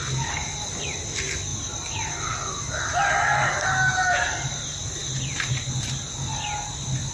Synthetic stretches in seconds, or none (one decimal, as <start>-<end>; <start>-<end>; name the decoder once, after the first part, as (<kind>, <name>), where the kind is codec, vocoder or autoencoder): none